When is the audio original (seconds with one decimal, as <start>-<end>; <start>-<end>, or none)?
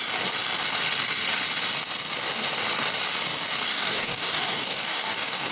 0.0-3.7